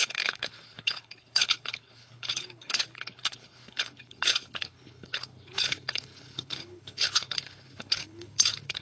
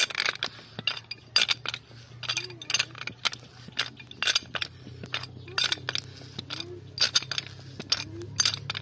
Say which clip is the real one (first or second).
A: second